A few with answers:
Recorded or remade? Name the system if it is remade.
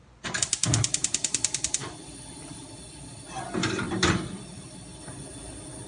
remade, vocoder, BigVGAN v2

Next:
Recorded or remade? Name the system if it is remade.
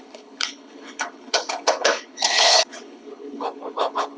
remade, codec, HILCodec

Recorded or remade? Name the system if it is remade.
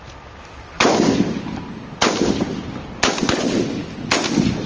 recorded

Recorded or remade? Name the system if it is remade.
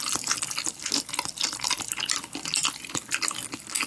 recorded